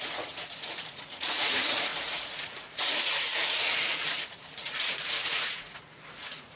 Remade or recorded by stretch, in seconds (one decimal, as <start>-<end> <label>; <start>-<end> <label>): 0.0-6.6 remade